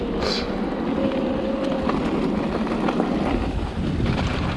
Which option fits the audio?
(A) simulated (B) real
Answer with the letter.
B